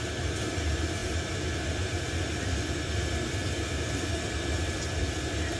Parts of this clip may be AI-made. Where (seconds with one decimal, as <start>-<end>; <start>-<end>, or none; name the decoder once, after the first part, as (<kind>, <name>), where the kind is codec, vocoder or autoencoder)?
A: none